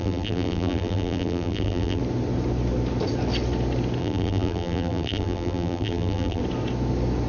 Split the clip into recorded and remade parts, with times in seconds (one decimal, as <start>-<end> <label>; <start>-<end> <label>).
0.0-2.0 remade; 2.0-4.0 recorded; 4.0-6.4 remade; 6.4-7.3 recorded